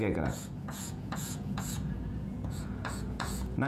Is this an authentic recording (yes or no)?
no